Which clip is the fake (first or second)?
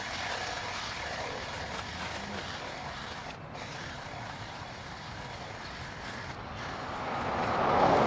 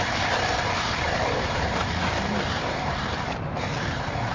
second